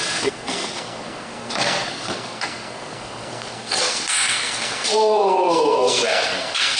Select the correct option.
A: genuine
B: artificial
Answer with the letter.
B